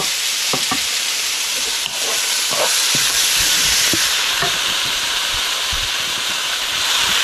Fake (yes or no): yes